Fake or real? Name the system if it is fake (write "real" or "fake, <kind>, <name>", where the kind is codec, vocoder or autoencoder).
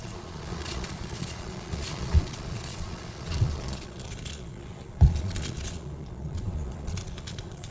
fake, vocoder, Vocos